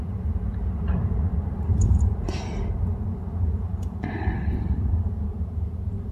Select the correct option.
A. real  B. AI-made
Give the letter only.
B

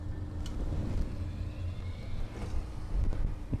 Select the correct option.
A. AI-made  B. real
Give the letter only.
B